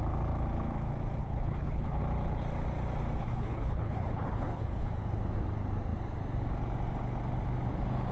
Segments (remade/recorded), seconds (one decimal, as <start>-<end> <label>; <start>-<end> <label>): 0.0-1.2 recorded; 1.2-2.0 remade; 2.0-3.2 recorded; 3.2-4.9 remade; 4.9-8.1 recorded